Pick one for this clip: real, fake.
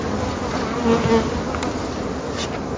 real